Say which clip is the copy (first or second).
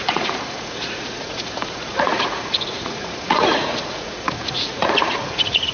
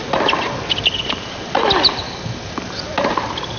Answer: first